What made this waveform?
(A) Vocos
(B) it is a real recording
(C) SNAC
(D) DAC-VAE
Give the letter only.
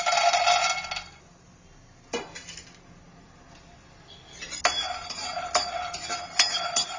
B